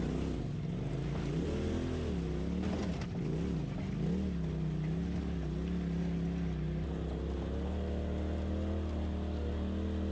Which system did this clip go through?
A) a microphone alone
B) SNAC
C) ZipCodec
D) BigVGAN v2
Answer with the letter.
A